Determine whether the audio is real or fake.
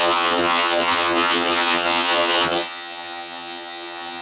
fake